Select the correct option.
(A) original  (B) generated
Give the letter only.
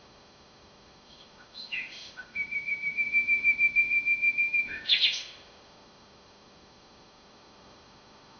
B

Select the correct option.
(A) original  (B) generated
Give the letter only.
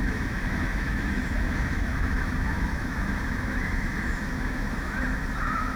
B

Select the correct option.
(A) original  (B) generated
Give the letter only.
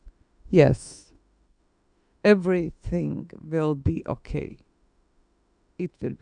B